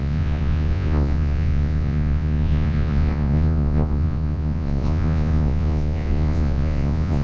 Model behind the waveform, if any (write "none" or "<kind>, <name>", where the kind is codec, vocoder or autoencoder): vocoder, Vocos